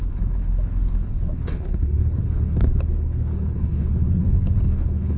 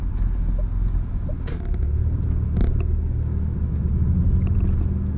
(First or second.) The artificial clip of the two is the first